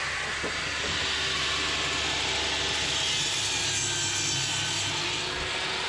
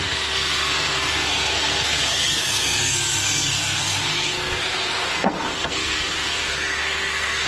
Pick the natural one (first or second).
first